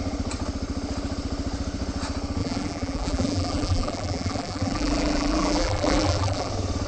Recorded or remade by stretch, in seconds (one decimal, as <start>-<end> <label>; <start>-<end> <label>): 0.0-2.4 recorded; 2.4-6.5 remade; 6.5-6.9 recorded